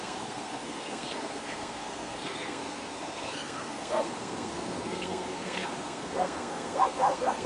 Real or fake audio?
fake